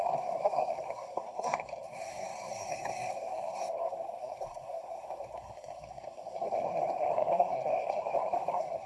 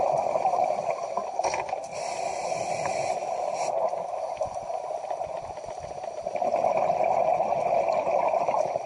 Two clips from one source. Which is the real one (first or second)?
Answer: second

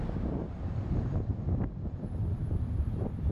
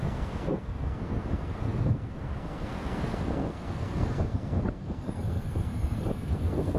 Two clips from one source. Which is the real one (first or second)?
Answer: first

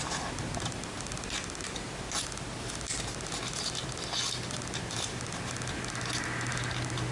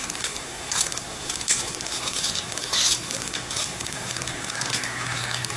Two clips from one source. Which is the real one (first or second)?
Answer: first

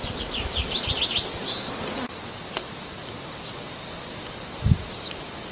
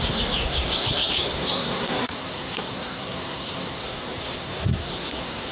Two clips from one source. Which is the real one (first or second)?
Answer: first